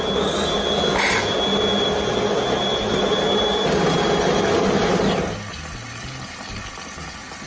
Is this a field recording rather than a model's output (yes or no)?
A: yes